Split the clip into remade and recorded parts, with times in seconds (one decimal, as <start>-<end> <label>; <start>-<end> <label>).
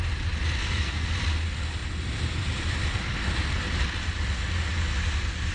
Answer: 0.0-0.6 recorded; 0.6-1.1 remade; 1.1-5.5 recorded